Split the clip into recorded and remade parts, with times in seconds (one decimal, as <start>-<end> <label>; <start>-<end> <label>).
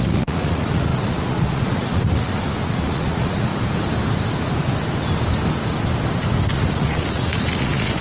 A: 0.0-3.5 remade; 3.5-6.5 recorded; 6.5-8.0 remade